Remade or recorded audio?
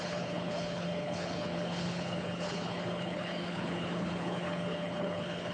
remade